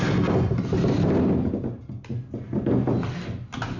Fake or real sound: real